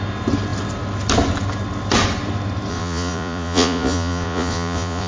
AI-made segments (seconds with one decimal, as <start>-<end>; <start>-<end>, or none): 2.7-5.1